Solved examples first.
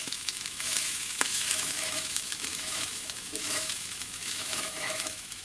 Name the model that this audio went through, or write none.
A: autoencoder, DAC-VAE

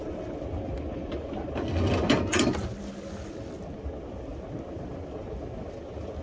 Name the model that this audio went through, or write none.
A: none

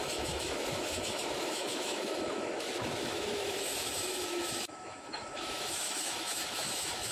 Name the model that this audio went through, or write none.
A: autoencoder, DAC-VAE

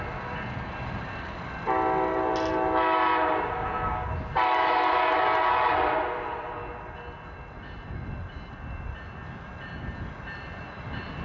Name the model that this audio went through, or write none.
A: none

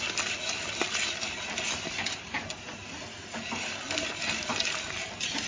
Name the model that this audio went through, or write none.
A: none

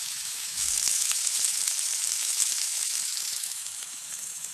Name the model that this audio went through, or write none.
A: autoencoder, DAC-VAE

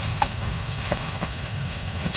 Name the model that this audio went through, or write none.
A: autoencoder, DAC-VAE